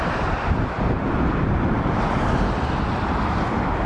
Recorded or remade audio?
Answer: recorded